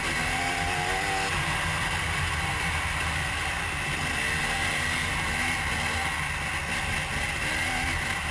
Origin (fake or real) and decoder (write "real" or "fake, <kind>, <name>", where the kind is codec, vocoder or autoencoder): real